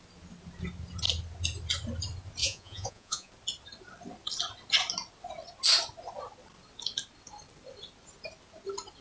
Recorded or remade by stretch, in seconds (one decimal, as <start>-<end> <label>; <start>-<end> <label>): 0.0-2.4 recorded; 2.4-3.3 remade; 3.3-9.0 recorded